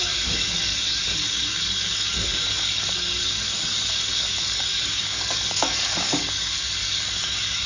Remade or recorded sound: remade